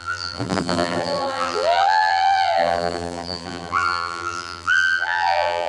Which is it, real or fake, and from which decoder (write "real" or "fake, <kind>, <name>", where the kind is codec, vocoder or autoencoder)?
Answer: fake, vocoder, BigVGAN v2